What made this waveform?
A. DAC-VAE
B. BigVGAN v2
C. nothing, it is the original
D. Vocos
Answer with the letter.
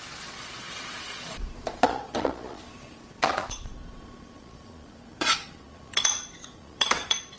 D